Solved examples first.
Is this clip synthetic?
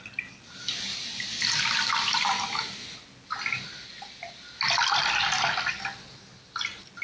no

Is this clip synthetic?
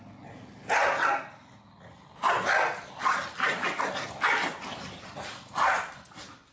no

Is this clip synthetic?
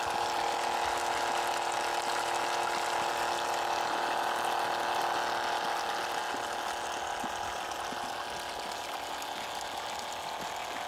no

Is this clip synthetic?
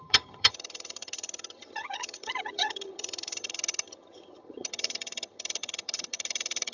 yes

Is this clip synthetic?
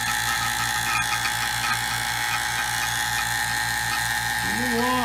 no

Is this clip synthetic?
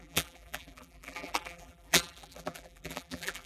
yes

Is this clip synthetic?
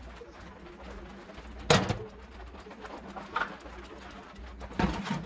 no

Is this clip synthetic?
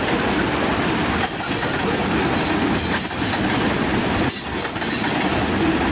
yes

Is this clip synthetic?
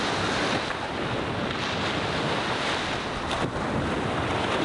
no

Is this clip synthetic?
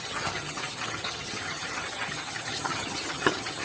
yes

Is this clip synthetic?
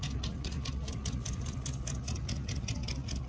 yes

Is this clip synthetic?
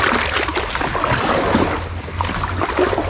no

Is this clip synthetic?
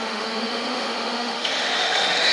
yes